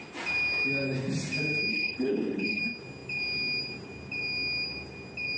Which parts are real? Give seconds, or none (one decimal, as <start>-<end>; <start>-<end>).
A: 0.0-1.7; 2.6-5.4